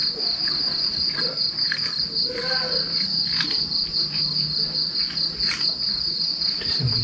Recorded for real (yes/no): yes